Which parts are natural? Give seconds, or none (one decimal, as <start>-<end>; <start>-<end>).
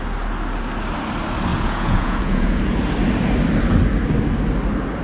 0.0-1.5; 2.6-5.0